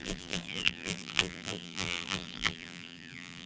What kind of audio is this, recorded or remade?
remade